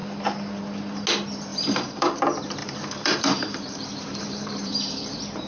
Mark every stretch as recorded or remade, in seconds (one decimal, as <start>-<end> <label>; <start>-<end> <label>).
0.0-1.5 recorded; 1.5-2.2 remade; 2.2-2.6 recorded; 2.6-5.5 remade